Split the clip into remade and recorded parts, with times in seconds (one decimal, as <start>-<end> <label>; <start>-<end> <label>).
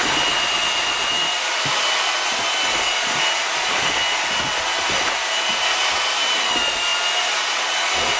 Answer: 0.0-8.2 recorded